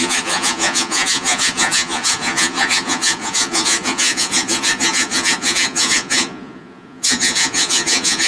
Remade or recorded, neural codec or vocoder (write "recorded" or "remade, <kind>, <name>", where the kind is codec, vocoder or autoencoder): remade, vocoder, Vocos